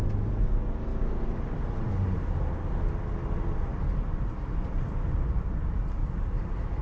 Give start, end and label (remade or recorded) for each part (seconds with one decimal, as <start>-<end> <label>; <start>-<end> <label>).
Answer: 0.0-0.9 recorded; 0.9-2.8 remade; 2.8-3.7 recorded; 3.7-4.3 remade; 4.3-6.0 recorded; 6.0-6.8 remade